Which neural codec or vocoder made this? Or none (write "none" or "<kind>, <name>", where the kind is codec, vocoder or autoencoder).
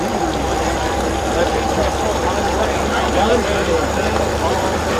vocoder, BigVGAN v2